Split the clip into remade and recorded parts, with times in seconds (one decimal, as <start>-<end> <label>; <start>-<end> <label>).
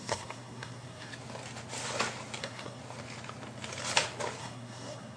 0.0-1.1 remade; 1.1-2.4 recorded; 2.4-2.8 remade; 2.8-4.4 recorded; 4.4-5.2 remade